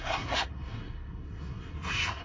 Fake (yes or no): yes